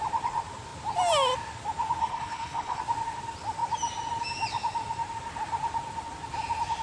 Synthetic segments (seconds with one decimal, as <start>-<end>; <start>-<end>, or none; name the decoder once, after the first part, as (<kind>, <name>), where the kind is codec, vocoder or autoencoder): 2.0-2.8 (codec, HILCodec)